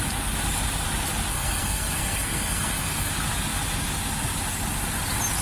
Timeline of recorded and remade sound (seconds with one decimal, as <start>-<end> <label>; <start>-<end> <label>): 0.0-1.3 recorded; 1.3-3.1 remade; 3.1-5.4 recorded